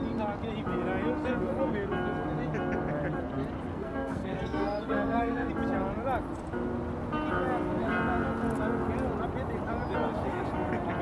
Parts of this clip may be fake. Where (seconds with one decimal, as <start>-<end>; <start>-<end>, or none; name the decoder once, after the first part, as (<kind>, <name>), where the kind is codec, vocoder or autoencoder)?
3.7-5.5 (codec, SNAC)

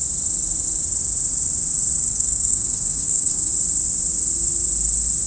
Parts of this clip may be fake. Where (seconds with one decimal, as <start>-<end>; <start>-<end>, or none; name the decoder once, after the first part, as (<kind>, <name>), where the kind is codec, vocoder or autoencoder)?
2.1-3.5 (codec, SNAC)

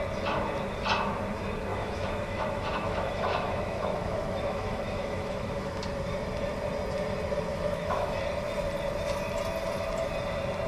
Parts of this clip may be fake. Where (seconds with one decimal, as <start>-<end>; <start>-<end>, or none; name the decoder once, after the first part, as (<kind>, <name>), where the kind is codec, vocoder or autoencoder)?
1.7-5.8 (autoencoder, DAC-VAE); 7.5-8.2

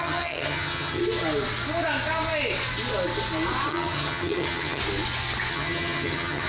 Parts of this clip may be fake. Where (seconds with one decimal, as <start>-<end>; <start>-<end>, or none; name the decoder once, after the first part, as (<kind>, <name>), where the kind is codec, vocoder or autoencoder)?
0.0-1.0 (vocoder, HiFi-GAN); 3.7-4.8; 5.5-6.5